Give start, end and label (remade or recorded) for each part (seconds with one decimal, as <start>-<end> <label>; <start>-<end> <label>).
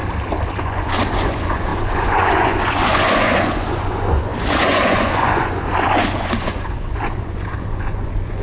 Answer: 0.0-0.6 recorded; 0.6-8.4 remade